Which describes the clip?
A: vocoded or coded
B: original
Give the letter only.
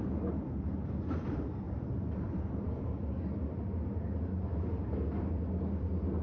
B